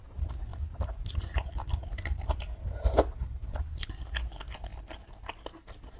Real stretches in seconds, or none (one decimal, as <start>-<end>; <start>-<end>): 0.0-0.5; 4.1-6.0